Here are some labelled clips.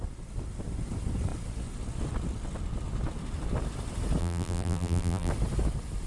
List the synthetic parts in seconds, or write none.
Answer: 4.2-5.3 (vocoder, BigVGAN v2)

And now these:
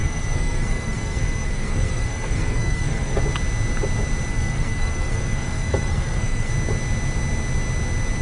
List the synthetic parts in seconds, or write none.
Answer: 0.0-3.2 (codec, SNAC); 4.3-6.5

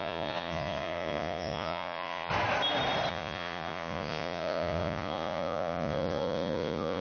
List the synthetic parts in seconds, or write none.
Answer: 0.0-2.3 (vocoder, Vocos); 3.1-7.0

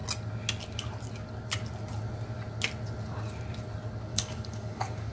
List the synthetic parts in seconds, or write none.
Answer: 4.1-5.1 (codec, DAC)

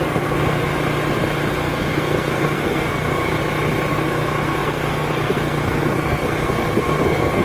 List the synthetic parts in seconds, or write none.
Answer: 0.0-0.7 (codec, SNAC); 1.5-3.3; 3.9-7.4

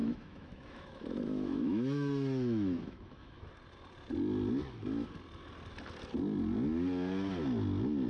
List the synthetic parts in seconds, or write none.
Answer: 0.0-3.5 (autoencoder, DAC-VAE)

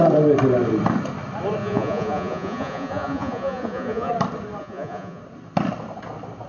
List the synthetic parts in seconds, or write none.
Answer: 1.6-4.1 (vocoder, Vocos); 4.6-5.2